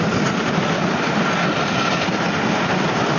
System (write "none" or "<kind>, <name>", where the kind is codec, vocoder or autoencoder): none